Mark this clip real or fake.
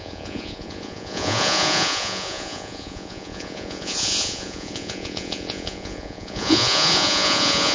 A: fake